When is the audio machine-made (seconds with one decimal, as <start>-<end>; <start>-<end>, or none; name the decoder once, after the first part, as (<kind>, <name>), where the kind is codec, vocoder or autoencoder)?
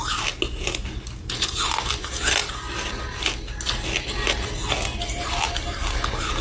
none